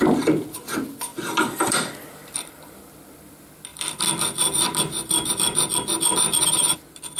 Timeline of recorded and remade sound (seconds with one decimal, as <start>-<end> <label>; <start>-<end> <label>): 0.0-1.1 recorded; 1.1-2.8 remade; 2.8-3.7 recorded; 3.7-5.3 remade; 5.3-7.2 recorded